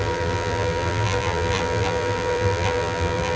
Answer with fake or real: fake